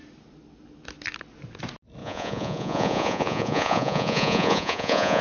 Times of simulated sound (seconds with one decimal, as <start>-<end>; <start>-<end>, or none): 2.0-5.2